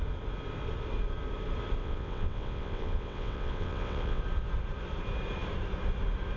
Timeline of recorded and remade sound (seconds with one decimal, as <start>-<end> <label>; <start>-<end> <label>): 0.0-1.8 recorded; 1.8-4.2 remade; 4.2-6.4 recorded